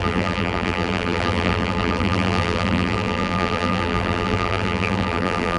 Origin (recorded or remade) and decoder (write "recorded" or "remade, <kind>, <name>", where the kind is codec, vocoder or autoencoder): remade, vocoder, BigVGAN v2